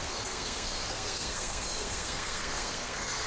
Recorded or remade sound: remade